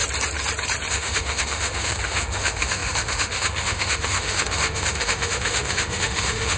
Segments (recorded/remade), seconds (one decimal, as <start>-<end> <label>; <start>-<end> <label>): 0.0-0.9 recorded; 0.9-6.6 remade